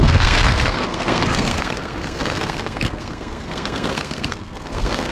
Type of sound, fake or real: fake